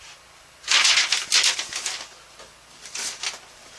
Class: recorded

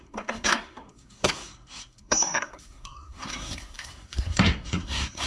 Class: remade